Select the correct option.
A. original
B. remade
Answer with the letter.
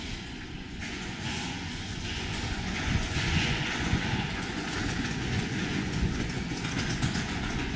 B